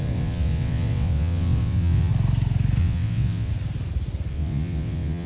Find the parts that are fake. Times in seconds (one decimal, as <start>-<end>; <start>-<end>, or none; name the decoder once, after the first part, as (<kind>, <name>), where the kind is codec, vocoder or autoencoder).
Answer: 0.0-2.1 (vocoder, WaveNeXt); 2.8-3.5; 4.3-5.3